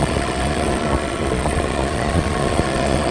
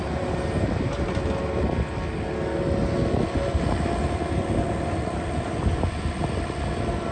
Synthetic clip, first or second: first